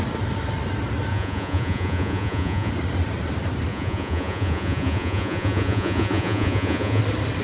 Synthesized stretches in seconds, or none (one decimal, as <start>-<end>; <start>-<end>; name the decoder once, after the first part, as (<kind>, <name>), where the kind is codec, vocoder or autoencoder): 1.1-2.7 (vocoder, Vocos); 3.7-7.0